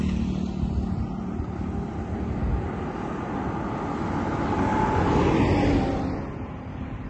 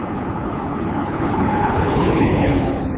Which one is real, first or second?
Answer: first